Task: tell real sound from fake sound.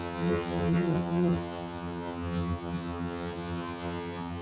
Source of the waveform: fake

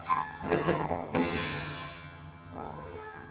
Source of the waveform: fake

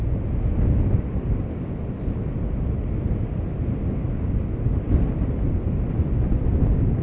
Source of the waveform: real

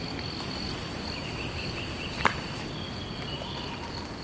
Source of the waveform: real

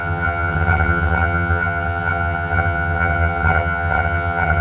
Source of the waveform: fake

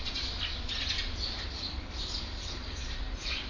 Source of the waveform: real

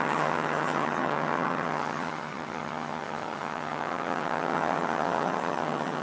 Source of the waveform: fake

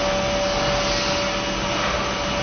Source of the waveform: real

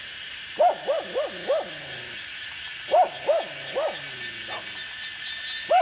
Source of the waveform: real